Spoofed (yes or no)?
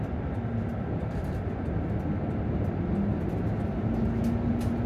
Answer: no